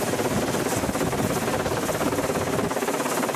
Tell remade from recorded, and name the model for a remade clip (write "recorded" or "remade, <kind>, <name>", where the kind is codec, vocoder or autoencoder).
recorded